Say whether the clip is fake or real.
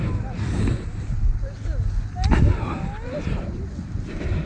real